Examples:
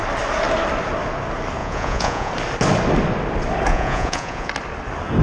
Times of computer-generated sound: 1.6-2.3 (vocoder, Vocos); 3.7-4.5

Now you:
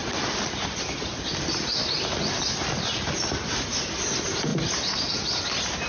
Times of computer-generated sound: none